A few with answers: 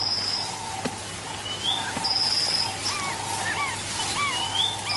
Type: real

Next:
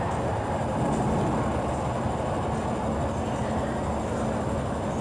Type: real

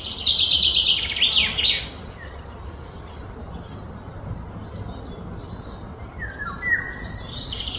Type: real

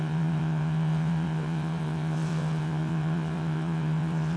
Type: fake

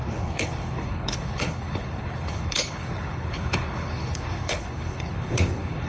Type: fake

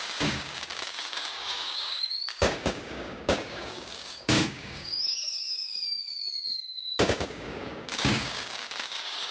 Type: fake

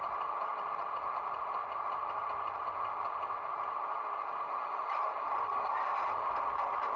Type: real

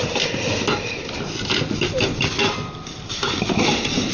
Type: real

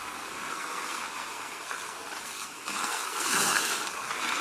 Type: fake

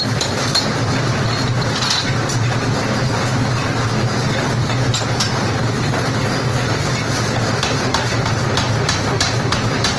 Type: real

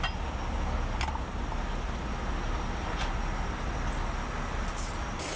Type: real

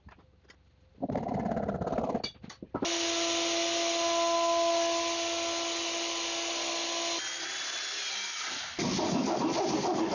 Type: real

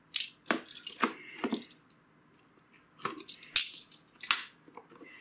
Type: real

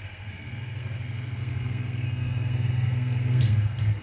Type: fake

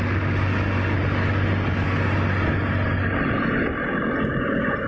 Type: real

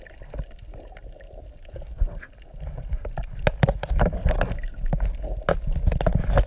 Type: real